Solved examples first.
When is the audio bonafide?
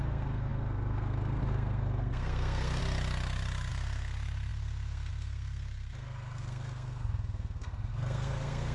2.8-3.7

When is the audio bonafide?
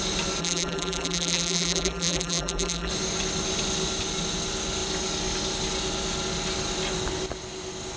0.0-0.4; 2.9-8.0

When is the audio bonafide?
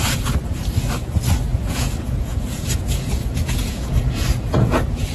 0.0-1.5; 4.6-5.1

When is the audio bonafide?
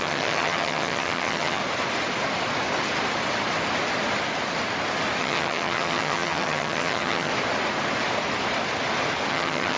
1.6-5.2; 7.3-9.3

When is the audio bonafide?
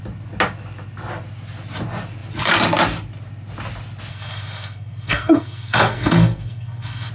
0.0-4.1